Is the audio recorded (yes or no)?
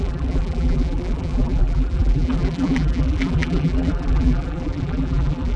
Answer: no